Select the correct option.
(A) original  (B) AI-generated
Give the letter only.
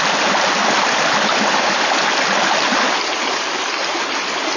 A